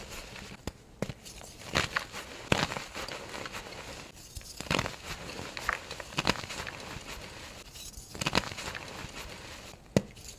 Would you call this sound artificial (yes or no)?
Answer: no